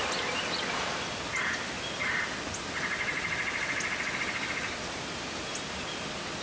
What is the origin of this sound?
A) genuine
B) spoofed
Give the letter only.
A